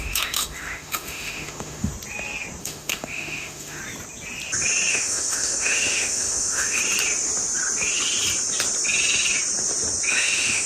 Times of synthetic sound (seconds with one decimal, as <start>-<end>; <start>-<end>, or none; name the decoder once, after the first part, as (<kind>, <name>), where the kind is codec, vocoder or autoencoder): 0.0-1.9 (autoencoder, DAC-VAE); 2.6-3.8; 4.9-6.8; 10.1-10.7